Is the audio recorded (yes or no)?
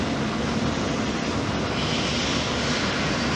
no